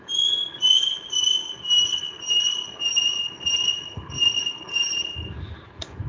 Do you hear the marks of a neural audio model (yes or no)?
no